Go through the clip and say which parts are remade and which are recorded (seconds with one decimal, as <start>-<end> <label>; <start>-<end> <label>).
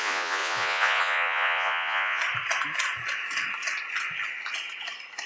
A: 0.0-2.2 remade; 2.2-5.3 recorded